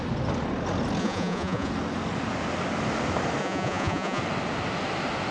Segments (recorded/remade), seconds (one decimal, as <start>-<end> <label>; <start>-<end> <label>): 0.0-1.0 recorded; 1.0-1.7 remade; 1.7-3.4 recorded; 3.4-4.2 remade; 4.2-5.3 recorded